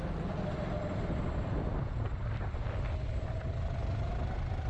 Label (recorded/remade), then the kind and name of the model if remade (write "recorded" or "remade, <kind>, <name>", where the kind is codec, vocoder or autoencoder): recorded